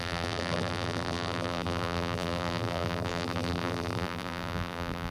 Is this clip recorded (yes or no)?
no